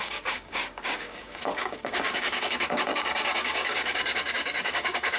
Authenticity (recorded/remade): remade